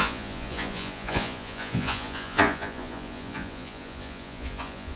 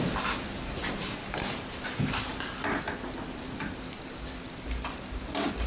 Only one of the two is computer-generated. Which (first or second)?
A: first